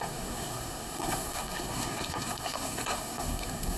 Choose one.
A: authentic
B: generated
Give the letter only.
B